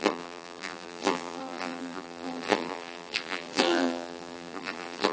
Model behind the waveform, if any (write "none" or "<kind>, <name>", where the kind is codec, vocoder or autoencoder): vocoder, BigVGAN v2